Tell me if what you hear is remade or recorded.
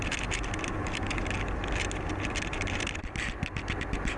recorded